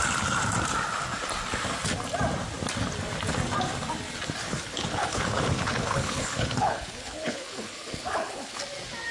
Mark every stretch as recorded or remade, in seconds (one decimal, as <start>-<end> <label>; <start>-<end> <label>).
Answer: 0.0-4.4 recorded; 4.4-8.6 remade; 8.6-9.1 recorded